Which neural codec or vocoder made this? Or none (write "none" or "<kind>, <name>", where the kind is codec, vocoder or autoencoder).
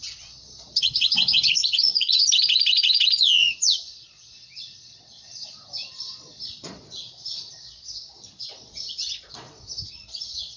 vocoder, Vocos